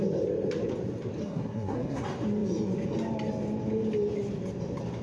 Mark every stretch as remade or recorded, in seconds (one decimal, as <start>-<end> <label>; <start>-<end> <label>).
0.0-1.2 recorded; 1.2-2.0 remade; 2.0-5.0 recorded